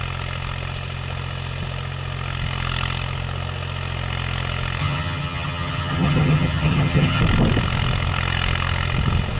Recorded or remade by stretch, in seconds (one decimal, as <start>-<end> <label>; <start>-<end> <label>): 0.0-4.8 recorded; 4.8-7.2 remade; 7.2-9.4 recorded